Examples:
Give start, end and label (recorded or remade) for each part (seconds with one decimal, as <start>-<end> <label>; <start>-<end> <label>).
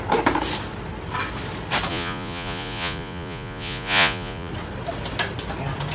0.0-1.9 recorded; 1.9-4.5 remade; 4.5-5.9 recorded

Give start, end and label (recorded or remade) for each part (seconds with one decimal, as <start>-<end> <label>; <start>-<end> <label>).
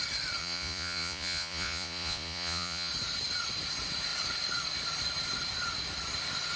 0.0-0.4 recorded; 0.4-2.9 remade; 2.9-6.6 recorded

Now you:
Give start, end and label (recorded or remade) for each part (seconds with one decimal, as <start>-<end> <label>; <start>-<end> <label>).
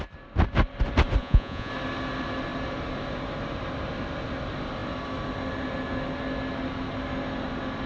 0.0-1.2 recorded; 1.2-1.7 remade; 1.7-7.9 recorded